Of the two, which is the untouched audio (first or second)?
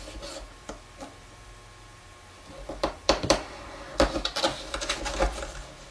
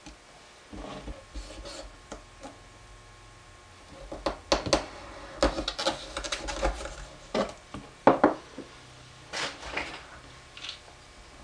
second